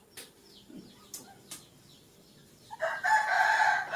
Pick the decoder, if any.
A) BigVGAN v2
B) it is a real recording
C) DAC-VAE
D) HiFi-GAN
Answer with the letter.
B